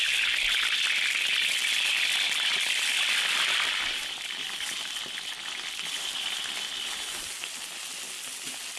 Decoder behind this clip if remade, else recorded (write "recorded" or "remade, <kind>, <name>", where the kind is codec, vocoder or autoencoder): recorded